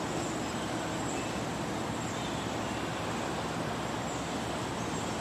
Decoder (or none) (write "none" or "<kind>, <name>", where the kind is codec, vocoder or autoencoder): none